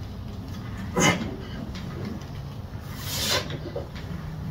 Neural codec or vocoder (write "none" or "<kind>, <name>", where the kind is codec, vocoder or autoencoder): none